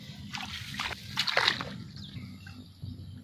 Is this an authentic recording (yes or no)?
yes